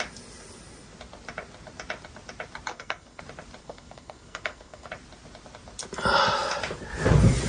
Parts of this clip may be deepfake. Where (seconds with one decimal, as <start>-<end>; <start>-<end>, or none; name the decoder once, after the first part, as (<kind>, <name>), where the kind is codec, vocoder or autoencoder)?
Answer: 2.7-3.2 (codec, SNAC); 3.6-4.9

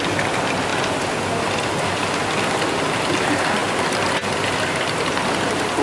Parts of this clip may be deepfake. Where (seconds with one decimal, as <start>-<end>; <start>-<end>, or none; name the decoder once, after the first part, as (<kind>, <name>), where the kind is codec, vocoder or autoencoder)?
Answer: none

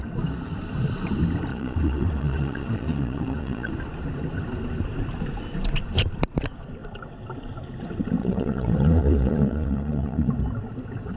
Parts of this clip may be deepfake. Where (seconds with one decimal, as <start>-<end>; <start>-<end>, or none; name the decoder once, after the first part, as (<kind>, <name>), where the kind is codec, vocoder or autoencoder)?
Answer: 1.5-3.7 (vocoder, Vocos); 8.2-10.3